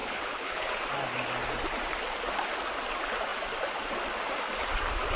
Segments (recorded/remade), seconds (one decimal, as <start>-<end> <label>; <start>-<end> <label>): 0.0-0.7 remade; 0.7-5.2 recorded